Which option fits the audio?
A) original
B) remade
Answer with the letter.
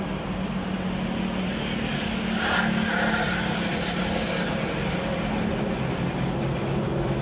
A